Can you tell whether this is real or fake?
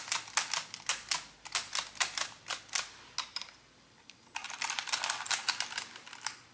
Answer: real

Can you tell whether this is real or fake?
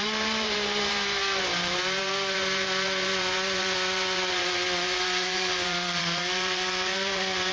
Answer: fake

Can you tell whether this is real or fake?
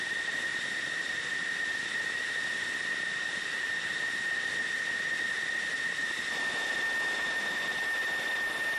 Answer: real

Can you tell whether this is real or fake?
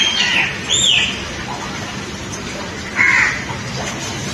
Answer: real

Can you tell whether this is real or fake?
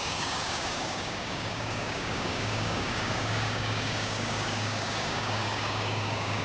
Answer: fake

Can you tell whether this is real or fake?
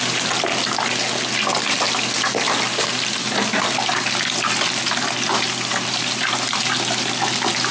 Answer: real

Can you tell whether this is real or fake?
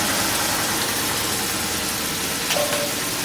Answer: real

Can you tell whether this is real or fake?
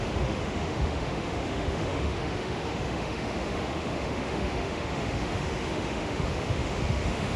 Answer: fake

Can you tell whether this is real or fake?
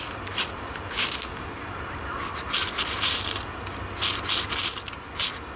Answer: real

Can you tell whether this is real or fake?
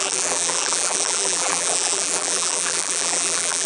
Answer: fake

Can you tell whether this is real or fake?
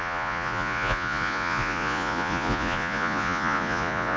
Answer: fake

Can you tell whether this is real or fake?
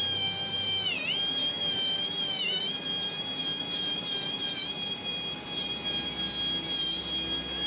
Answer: real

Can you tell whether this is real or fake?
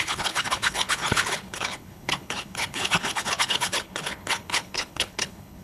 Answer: fake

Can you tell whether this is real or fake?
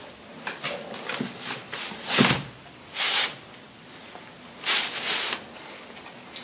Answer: real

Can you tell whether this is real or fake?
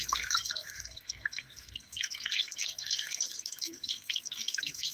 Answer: fake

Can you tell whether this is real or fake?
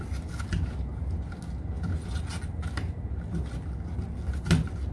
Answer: real